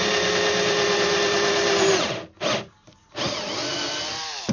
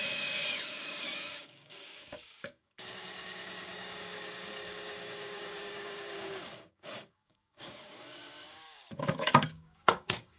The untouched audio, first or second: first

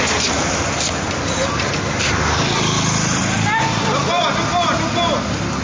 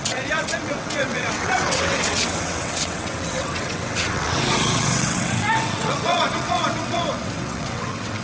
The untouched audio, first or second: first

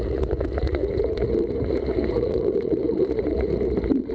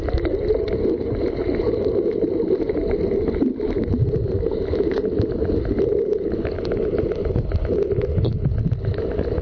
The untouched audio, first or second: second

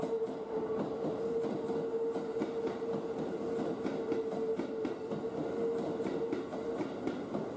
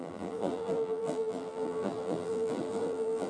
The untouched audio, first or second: first